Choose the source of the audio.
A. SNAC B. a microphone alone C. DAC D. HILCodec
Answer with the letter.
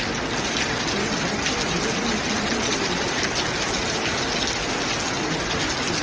B